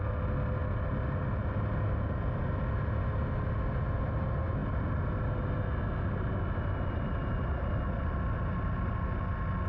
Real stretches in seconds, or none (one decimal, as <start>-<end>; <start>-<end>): 0.0-9.7